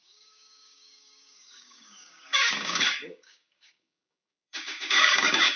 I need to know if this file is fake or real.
fake